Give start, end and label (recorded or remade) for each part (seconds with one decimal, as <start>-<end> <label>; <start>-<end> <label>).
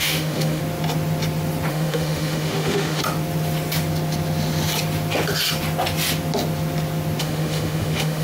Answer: 0.0-0.6 remade; 0.6-1.7 recorded; 1.7-3.0 remade; 3.0-7.2 recorded; 7.2-8.2 remade